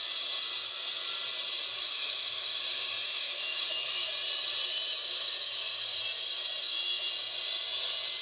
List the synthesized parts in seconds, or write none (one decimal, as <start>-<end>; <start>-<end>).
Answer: 1.8-2.6; 3.0-4.1; 6.6-7.1